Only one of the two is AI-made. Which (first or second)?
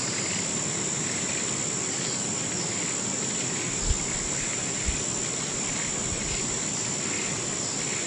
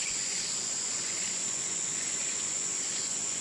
second